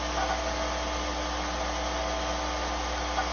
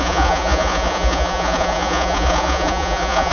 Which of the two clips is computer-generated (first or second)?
second